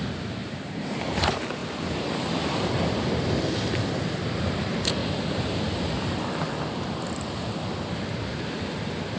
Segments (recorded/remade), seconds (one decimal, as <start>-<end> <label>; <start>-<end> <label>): 0.0-0.4 recorded; 0.4-1.2 remade; 1.2-1.6 recorded; 1.6-3.1 remade; 3.1-9.2 recorded